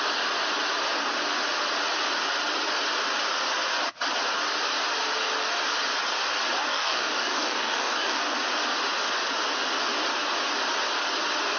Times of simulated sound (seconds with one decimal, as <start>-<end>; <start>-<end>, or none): 6.7-8.2